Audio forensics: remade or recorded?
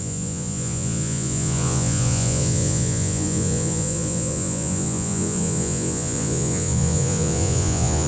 remade